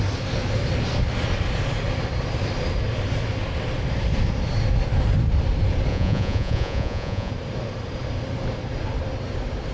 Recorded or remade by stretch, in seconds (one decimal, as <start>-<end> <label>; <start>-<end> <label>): 0.0-5.9 recorded; 5.9-7.3 remade; 7.3-9.7 recorded